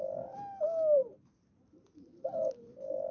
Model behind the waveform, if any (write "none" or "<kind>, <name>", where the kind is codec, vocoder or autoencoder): none